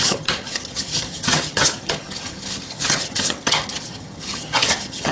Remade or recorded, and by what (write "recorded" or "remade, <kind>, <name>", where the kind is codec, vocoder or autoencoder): remade, vocoder, HiFi-GAN